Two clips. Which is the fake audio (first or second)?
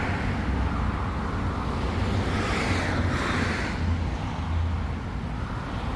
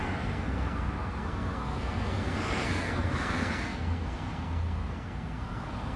second